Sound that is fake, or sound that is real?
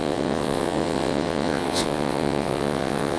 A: fake